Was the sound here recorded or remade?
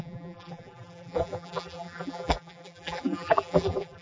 remade